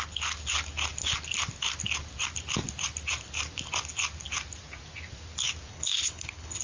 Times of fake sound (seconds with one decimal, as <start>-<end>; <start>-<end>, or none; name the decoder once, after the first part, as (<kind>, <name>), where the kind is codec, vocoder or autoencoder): 5.7-6.6 (codec, HILCodec)